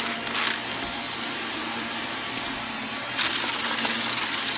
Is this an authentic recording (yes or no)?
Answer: yes